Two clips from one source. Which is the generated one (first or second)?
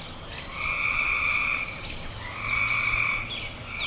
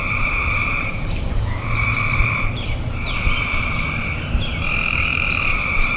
second